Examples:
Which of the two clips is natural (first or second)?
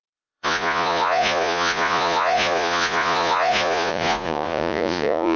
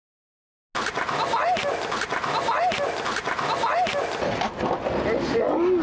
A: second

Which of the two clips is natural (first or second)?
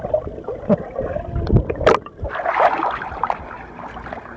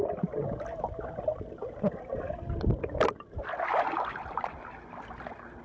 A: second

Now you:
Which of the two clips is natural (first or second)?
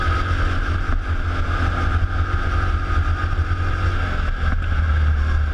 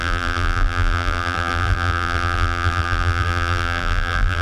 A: first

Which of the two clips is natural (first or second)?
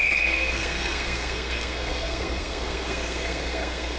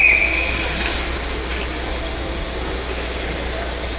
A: second